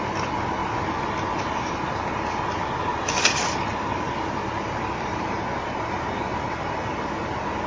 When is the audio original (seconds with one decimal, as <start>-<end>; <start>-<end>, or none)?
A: 0.0-0.6; 1.9-2.9; 5.4-7.7